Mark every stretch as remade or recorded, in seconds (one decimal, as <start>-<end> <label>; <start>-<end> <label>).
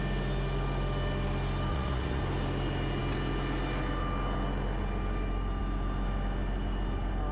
0.0-1.7 recorded; 1.7-2.2 remade; 2.2-7.3 recorded